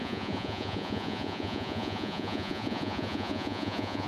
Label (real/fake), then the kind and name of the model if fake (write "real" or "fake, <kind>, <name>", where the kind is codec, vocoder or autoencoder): fake, vocoder, Vocos